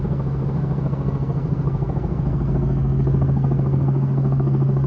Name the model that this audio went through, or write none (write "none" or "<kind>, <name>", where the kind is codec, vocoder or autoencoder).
codec, SNAC